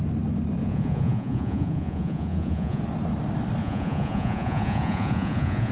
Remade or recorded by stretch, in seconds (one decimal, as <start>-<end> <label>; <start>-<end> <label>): 0.0-0.6 recorded; 0.6-2.8 remade; 2.8-3.6 recorded; 3.6-5.7 remade